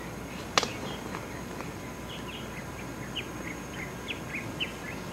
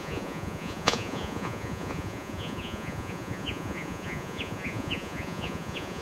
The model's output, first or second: second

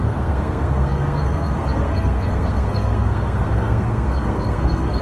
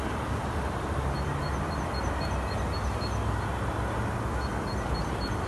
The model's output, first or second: first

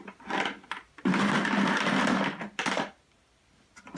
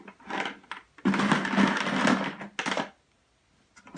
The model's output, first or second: first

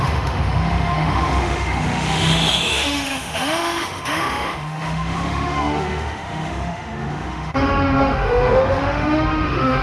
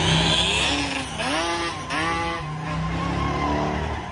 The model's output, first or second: first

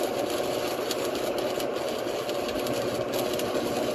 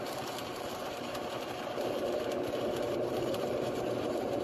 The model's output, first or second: second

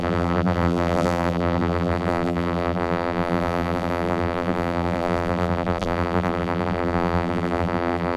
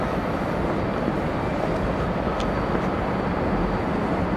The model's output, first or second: first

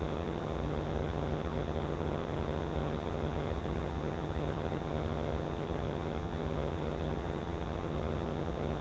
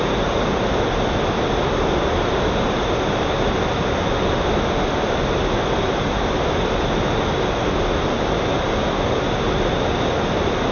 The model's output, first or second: first